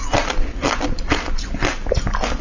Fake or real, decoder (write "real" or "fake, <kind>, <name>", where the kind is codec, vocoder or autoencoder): real